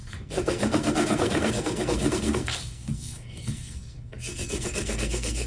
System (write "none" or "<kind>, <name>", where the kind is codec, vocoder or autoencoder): codec, SNAC